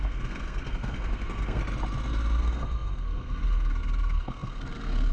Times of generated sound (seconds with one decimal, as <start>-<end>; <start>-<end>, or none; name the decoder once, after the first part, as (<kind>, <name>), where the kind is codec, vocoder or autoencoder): 0.0-1.6 (codec, SNAC); 2.4-5.1